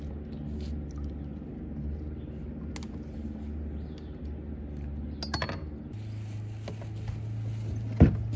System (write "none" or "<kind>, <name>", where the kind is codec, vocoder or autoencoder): none